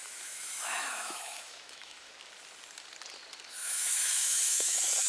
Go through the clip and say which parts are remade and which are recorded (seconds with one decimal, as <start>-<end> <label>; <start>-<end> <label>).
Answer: 0.0-2.1 remade; 2.1-3.5 recorded; 3.5-5.1 remade